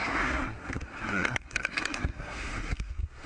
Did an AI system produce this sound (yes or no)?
yes